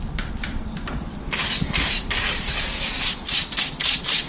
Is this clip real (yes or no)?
yes